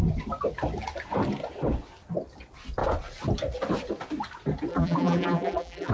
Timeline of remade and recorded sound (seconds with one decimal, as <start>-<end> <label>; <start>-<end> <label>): 0.0-4.7 recorded; 4.7-5.9 remade